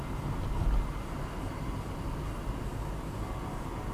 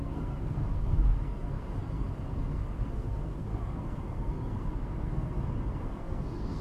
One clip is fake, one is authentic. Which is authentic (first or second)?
first